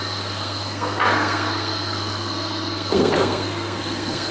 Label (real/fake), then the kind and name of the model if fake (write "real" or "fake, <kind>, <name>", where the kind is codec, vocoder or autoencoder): fake, codec, SNAC